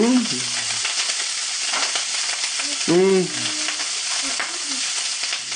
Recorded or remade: recorded